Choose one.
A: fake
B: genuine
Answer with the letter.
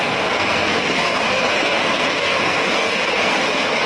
A